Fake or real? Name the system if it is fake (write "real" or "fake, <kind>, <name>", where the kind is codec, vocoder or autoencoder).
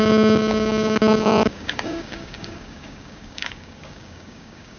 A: fake, codec, DAC